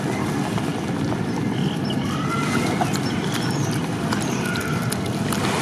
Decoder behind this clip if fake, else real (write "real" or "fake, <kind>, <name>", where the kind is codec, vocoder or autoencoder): real